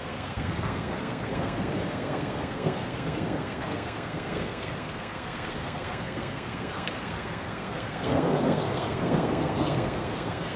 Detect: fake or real fake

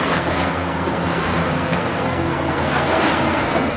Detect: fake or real fake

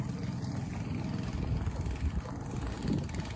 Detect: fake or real real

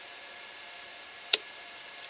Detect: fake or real fake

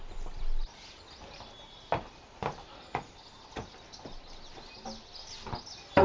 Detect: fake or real real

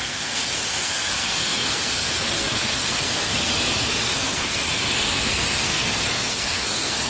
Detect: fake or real fake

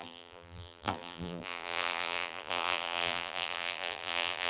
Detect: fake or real fake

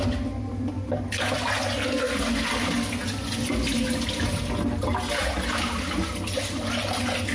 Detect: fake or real real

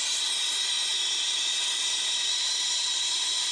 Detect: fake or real real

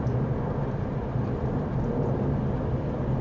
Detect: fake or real real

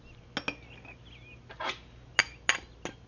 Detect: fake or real real